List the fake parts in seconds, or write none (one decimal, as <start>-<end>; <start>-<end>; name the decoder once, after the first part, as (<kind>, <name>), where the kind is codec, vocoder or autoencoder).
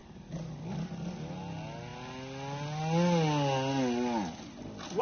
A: none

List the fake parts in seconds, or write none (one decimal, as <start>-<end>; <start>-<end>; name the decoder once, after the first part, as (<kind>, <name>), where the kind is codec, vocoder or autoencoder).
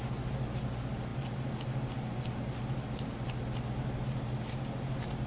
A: none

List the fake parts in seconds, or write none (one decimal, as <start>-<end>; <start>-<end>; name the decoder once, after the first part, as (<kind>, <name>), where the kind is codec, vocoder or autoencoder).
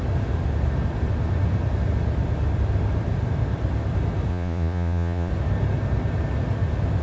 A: 4.3-5.3 (vocoder, Vocos)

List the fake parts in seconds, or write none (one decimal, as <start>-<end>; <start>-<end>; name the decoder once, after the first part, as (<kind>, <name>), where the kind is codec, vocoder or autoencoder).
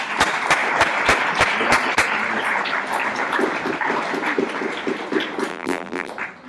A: 5.5-6.1 (vocoder, BigVGAN v2)